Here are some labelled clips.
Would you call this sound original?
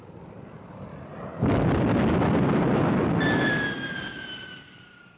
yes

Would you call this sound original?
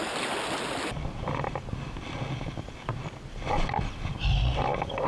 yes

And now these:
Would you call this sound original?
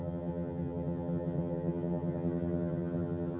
no